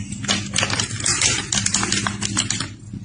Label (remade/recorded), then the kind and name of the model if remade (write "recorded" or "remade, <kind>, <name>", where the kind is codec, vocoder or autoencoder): recorded